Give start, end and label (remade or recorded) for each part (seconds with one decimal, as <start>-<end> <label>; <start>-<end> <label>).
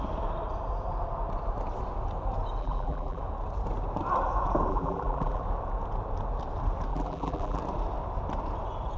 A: 0.0-2.6 recorded; 2.6-3.2 remade; 3.2-4.7 recorded; 4.7-5.4 remade; 5.4-6.9 recorded; 6.9-7.6 remade; 7.6-9.0 recorded